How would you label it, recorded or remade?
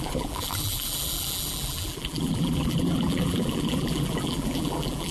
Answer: remade